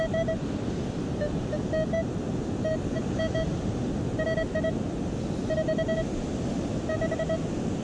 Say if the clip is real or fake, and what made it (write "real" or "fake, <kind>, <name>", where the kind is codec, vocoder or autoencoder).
real